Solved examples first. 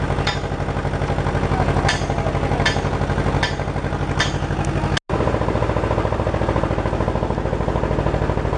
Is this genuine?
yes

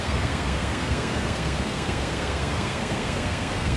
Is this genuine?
no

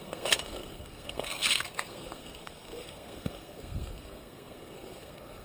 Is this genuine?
no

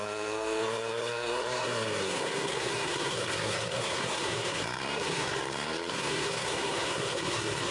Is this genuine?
no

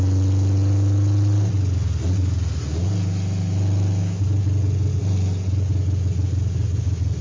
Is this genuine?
yes